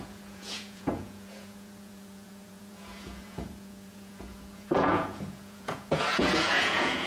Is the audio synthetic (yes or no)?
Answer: yes